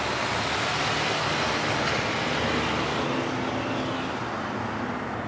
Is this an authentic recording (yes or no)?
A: yes